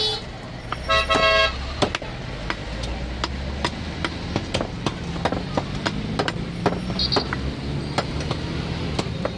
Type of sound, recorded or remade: recorded